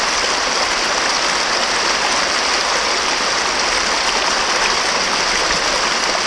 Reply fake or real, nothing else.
real